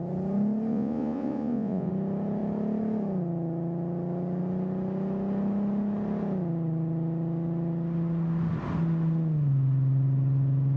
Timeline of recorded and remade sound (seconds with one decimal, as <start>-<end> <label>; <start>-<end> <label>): 0.0-0.7 recorded; 0.7-1.9 remade; 1.9-10.8 recorded